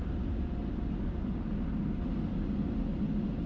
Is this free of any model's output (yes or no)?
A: yes